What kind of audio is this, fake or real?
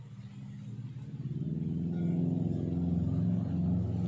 real